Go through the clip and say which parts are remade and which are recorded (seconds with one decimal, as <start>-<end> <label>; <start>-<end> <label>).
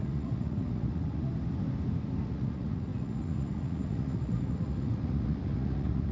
0.0-1.3 remade; 1.3-2.2 recorded; 2.2-6.1 remade